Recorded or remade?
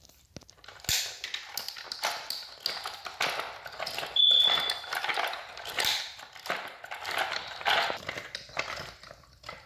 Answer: recorded